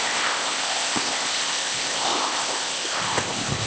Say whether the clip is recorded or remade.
remade